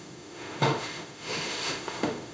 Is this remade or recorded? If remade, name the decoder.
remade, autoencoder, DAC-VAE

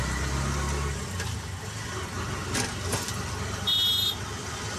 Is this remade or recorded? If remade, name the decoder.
recorded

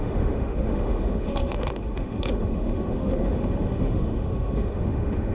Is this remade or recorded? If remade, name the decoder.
remade, autoencoder, DAC-VAE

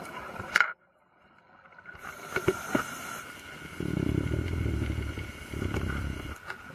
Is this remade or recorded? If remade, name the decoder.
recorded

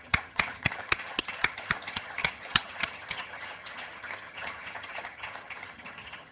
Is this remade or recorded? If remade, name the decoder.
remade, vocoder, HiFi-GAN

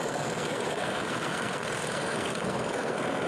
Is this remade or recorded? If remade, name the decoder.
remade, codec, SNAC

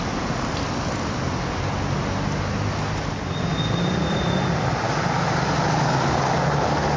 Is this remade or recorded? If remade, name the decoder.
recorded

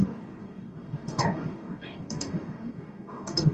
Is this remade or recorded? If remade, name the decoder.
remade, codec, DAC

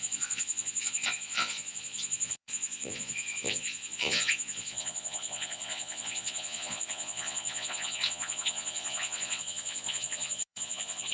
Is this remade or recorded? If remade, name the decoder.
remade, vocoder, Vocos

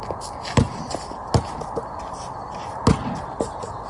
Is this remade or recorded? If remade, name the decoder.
recorded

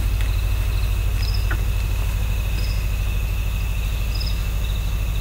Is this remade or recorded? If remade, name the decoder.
recorded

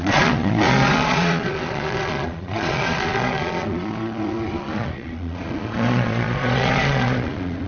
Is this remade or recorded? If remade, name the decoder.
remade, vocoder, Vocos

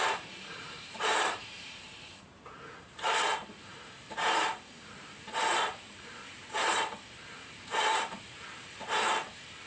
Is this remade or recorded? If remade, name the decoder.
remade, vocoder, BigVGAN v2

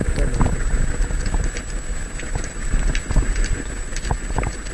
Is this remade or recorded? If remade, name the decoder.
recorded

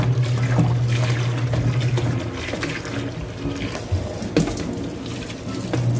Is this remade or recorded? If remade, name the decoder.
recorded